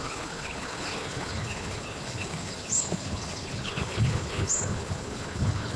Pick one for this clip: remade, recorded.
remade